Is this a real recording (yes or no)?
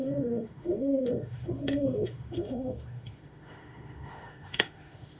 no